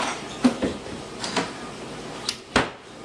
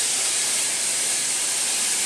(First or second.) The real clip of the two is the first